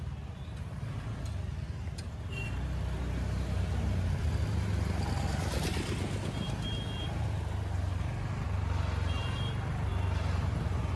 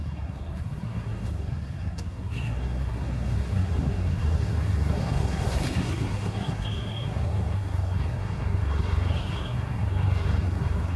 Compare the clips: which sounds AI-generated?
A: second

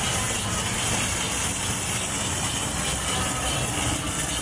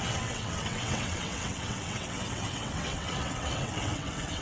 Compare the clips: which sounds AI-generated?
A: second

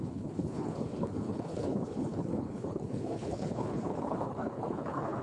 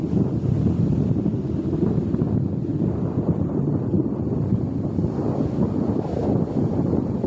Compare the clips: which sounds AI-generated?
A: first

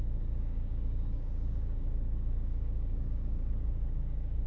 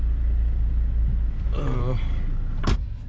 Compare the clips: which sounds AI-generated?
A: first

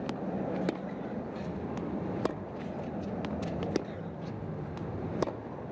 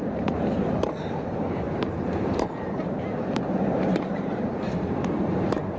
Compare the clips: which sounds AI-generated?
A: second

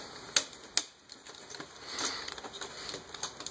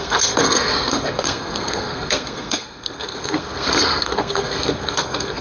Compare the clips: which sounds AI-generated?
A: second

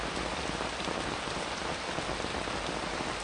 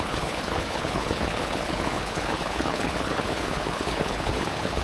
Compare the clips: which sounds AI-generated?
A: second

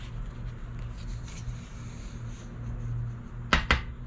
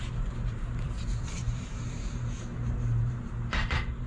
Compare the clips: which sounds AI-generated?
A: second